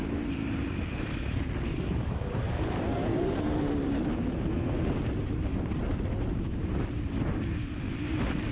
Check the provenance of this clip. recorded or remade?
remade